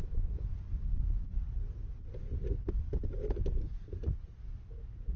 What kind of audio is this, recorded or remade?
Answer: recorded